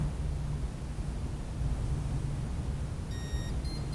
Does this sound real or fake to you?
real